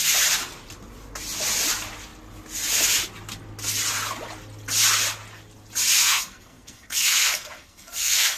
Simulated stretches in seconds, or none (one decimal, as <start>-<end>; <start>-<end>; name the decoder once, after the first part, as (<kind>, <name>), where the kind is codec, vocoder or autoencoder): 6.0-8.4 (codec, SNAC)